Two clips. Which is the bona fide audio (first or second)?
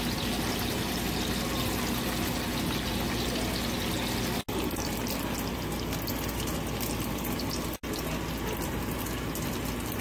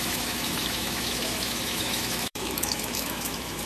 first